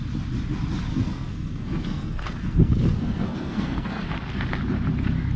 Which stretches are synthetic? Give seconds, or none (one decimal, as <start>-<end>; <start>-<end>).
0.9-4.1